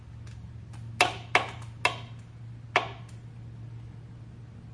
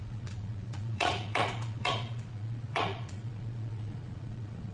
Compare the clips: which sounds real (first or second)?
first